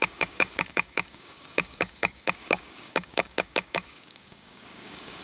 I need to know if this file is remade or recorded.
remade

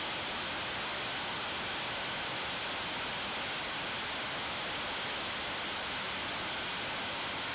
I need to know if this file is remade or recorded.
recorded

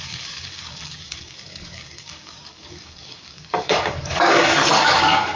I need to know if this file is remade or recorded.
remade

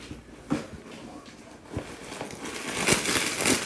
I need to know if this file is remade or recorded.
recorded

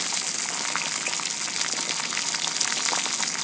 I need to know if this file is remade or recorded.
recorded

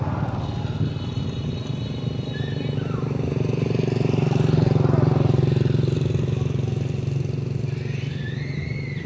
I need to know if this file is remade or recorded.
recorded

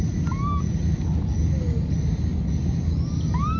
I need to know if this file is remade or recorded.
recorded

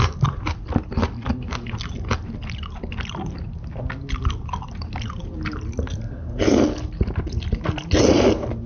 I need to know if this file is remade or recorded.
recorded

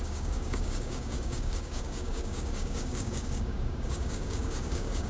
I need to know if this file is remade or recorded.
remade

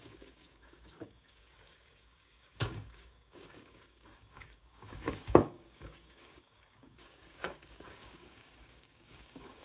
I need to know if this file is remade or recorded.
remade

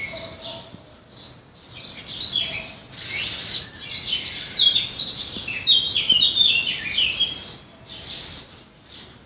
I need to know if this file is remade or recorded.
recorded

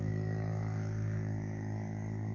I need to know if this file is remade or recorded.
remade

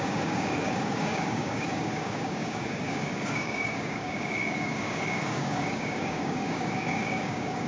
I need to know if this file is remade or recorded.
remade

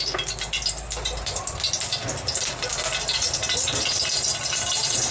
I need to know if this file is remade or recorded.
recorded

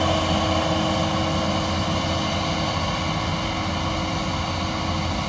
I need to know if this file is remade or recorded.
recorded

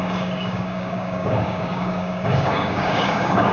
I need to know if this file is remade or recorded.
remade